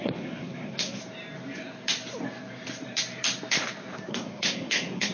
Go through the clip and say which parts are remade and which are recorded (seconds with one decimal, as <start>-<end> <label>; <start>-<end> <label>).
0.0-1.0 remade; 1.0-4.1 recorded; 4.1-5.1 remade